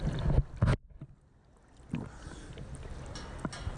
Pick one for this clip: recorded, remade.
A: recorded